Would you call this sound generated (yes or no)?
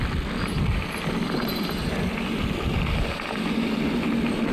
no